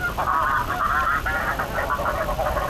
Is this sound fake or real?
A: real